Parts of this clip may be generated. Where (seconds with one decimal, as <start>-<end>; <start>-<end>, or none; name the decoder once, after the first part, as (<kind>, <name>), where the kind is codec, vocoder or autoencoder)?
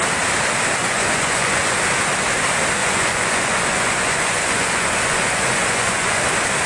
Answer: 0.8-1.8 (vocoder, Vocos); 2.8-6.2